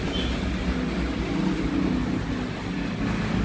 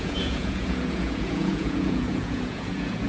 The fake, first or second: second